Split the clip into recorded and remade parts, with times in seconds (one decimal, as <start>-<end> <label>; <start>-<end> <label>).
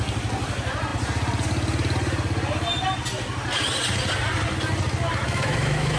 0.0-5.2 recorded; 5.2-6.0 remade